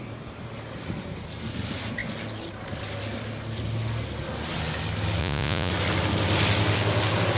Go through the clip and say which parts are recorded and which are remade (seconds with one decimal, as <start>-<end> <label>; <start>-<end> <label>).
0.0-5.2 recorded; 5.2-5.7 remade; 5.7-7.4 recorded